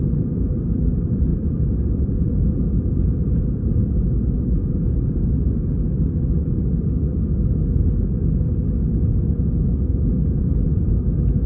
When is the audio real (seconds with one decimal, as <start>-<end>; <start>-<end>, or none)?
0.0-1.3; 5.1-8.9; 11.0-11.5